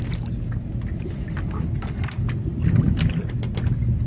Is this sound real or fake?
real